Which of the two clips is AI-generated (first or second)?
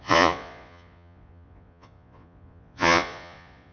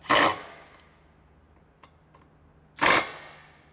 first